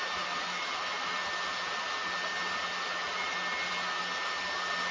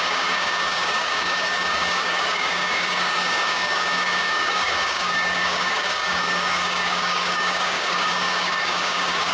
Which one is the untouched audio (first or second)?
first